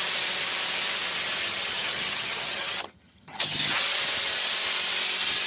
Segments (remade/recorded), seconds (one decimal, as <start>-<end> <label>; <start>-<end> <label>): 0.0-1.4 recorded; 1.4-3.8 remade; 3.8-5.5 recorded